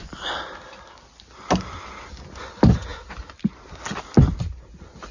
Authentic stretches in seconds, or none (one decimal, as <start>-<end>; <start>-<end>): 0.0-5.1